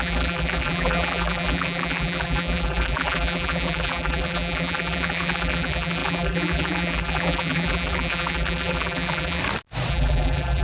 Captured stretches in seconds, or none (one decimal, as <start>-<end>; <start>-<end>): 9.4-9.9